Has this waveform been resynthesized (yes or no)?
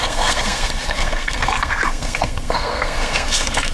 yes